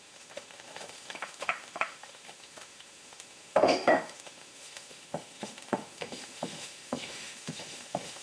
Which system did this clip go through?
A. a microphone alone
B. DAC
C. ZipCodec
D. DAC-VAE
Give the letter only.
D